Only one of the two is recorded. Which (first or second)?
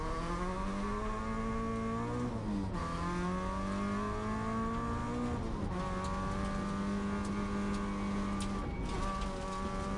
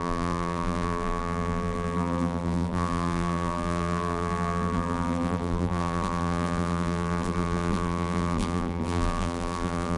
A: first